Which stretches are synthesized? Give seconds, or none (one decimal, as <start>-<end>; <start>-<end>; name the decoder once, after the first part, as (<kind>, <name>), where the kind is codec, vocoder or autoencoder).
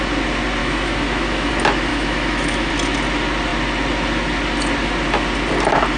0.6-1.5 (autoencoder, DAC-VAE); 1.9-2.7